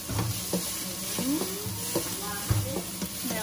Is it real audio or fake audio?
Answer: real